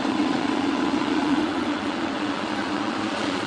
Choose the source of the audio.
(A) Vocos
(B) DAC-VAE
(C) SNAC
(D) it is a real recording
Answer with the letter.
A